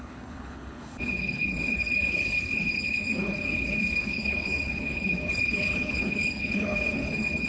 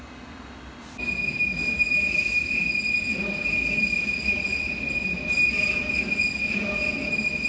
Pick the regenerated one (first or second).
first